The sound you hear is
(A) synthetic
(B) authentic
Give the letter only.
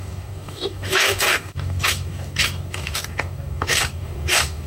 A